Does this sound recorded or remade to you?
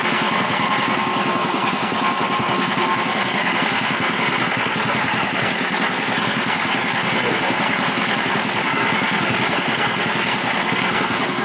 remade